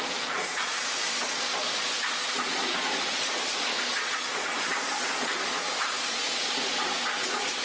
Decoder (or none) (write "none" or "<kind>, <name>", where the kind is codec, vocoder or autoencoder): vocoder, Vocos